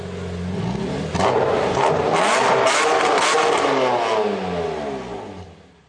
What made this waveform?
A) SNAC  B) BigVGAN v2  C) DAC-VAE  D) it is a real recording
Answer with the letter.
D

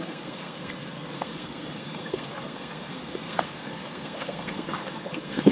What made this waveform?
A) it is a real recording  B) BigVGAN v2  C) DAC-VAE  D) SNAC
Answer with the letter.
D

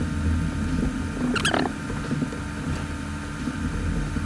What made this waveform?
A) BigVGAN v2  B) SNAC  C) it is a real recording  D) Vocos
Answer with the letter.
C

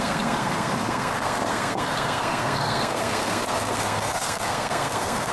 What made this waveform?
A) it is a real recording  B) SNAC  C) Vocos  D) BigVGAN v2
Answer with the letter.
B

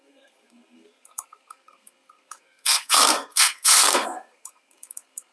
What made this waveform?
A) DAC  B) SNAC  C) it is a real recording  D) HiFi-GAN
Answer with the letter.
B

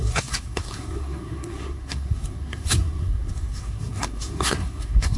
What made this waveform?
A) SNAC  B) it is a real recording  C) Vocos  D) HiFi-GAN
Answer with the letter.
A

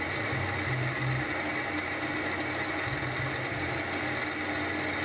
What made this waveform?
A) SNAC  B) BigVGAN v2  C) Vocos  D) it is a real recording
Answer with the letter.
D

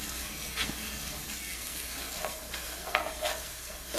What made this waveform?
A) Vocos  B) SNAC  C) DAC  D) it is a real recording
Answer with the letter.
B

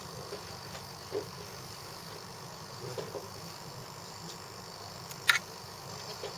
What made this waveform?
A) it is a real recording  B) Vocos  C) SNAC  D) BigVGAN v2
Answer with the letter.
A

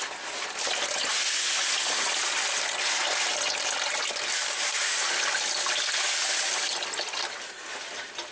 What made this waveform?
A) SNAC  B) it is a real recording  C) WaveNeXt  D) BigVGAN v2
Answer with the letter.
B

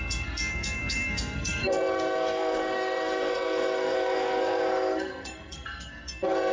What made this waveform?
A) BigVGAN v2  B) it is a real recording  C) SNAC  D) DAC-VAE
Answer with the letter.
C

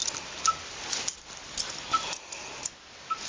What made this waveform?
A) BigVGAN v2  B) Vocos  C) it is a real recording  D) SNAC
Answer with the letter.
C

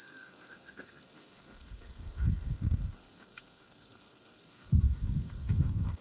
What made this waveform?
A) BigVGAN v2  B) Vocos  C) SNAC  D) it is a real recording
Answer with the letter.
C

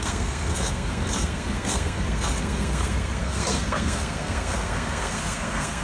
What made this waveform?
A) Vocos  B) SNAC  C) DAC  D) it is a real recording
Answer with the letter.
B